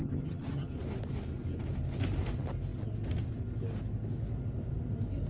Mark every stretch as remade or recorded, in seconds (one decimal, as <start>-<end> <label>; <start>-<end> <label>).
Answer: 0.0-0.7 remade; 0.7-5.3 recorded